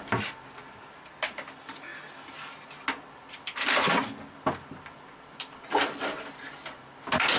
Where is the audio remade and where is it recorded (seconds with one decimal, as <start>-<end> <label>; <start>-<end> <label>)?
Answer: 0.0-7.4 recorded